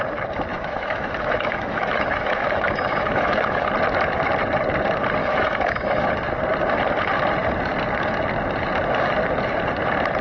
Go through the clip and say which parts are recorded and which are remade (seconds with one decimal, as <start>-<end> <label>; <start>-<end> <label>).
0.0-0.5 recorded; 0.5-3.7 remade; 3.7-5.2 recorded; 5.2-6.1 remade; 6.1-10.2 recorded